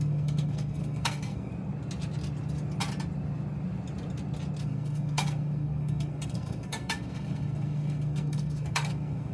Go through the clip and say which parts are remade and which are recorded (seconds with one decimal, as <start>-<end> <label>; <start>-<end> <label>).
0.0-1.5 remade; 1.5-4.6 recorded; 4.6-9.3 remade

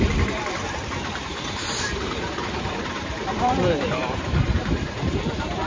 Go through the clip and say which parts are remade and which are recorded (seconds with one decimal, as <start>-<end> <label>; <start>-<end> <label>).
0.0-5.7 remade

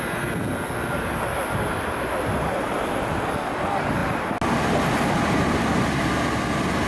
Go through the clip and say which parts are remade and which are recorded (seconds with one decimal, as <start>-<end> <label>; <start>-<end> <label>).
0.0-6.9 recorded

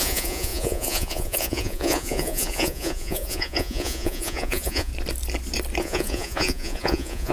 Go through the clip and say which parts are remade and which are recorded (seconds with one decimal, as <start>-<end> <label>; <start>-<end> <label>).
0.0-4.9 remade; 4.9-5.8 recorded; 5.8-7.3 remade

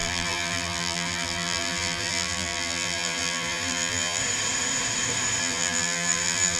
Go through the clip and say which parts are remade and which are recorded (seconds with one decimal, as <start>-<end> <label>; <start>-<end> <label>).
0.0-4.2 remade; 4.2-5.4 recorded; 5.4-6.6 remade

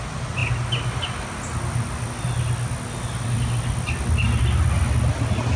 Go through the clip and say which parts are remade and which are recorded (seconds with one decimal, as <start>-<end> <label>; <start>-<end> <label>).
0.0-5.6 recorded

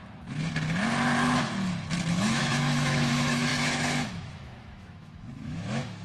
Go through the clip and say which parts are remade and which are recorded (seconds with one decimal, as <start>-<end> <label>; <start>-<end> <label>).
0.0-2.1 recorded; 2.1-6.0 remade